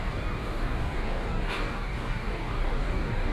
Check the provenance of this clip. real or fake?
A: fake